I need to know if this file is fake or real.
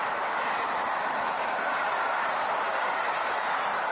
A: real